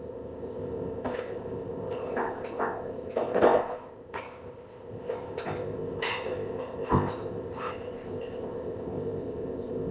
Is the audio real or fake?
fake